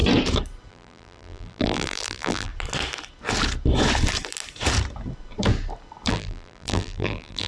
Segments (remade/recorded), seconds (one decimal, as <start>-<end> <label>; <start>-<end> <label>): 0.0-0.7 recorded; 0.7-2.5 remade; 2.5-6.1 recorded; 6.1-7.5 remade